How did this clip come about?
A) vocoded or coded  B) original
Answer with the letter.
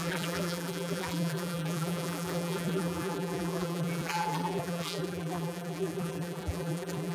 A